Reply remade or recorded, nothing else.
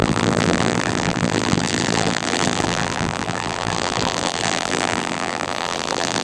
remade